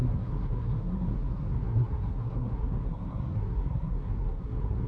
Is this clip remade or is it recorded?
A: remade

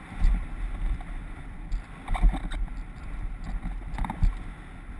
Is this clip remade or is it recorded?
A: recorded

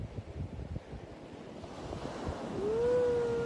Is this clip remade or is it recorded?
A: recorded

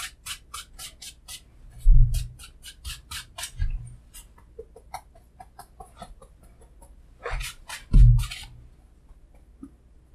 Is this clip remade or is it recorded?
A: recorded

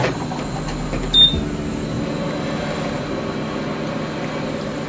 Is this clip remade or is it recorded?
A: recorded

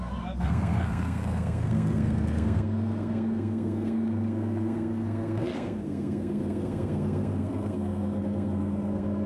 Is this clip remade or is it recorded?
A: remade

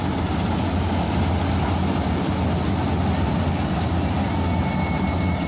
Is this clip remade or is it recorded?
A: recorded